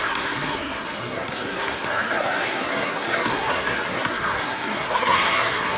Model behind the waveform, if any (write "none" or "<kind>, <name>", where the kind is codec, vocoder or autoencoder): codec, SNAC